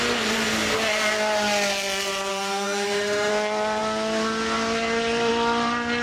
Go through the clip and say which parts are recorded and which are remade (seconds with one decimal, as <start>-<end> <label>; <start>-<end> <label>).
0.0-2.3 recorded; 2.3-3.3 remade; 3.3-6.0 recorded